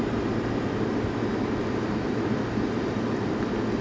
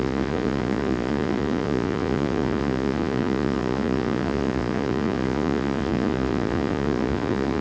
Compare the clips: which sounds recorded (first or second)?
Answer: first